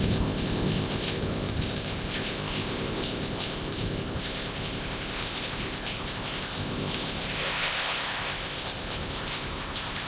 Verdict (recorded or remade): remade